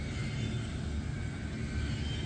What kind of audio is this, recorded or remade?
recorded